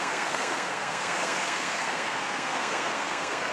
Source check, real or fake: fake